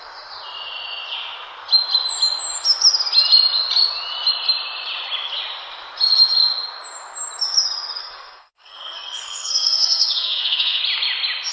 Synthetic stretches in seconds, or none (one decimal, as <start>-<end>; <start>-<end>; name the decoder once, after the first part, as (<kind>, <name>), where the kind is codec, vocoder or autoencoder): 8.0-10.8 (codec, SNAC)

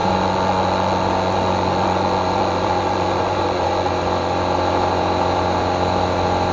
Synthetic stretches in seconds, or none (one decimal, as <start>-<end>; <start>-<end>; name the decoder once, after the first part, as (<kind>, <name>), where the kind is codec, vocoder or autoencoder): 0.0-3.9 (vocoder, Vocos)

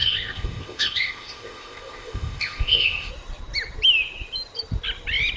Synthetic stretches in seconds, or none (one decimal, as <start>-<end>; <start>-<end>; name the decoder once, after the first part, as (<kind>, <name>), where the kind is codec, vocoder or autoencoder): 0.0-3.1 (codec, ZipCodec)

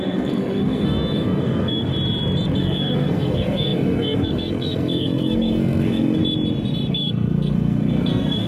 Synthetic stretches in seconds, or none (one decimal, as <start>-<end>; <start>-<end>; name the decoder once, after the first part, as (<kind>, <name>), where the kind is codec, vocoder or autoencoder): 0.0-1.9 (codec, SNAC); 2.6-6.2; 6.9-8.5

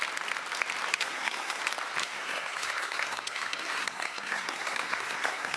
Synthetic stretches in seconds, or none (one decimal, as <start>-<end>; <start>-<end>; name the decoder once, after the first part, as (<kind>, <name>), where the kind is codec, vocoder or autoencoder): 0.9-1.6 (codec, SNAC); 2.0-5.6

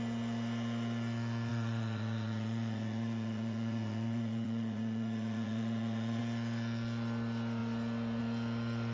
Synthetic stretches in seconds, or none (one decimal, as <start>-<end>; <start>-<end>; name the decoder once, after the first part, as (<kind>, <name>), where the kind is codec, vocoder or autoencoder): 1.5-6.2 (vocoder, Vocos)

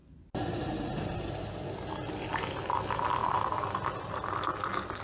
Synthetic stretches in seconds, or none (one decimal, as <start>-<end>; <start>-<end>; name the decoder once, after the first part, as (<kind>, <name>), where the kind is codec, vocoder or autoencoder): 0.0-1.5 (vocoder, BigVGAN v2)